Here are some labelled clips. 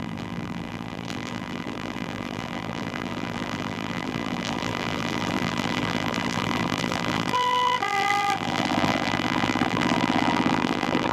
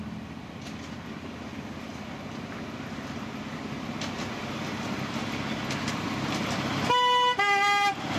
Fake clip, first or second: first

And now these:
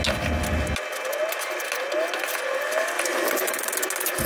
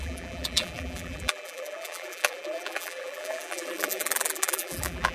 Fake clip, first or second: second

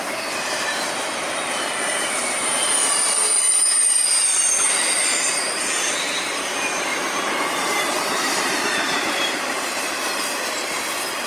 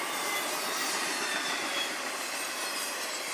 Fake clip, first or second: first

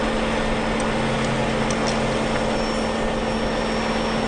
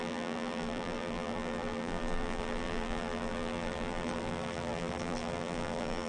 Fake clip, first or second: second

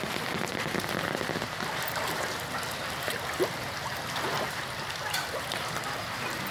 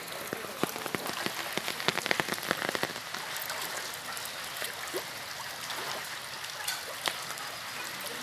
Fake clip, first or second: first